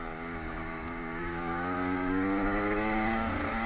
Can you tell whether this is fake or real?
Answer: fake